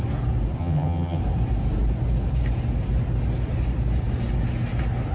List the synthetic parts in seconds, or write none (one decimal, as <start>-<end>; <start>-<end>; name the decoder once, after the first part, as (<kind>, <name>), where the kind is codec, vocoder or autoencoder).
0.6-1.2 (vocoder, HiFi-GAN)